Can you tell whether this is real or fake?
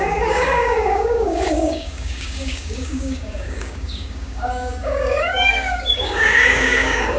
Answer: fake